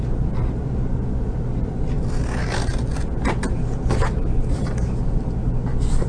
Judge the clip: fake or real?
real